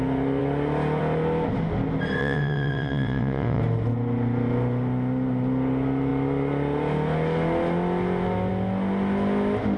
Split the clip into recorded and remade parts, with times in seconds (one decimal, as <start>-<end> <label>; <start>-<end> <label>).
0.0-2.2 recorded; 2.2-3.6 remade; 3.6-9.8 recorded